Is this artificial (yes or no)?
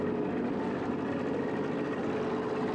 no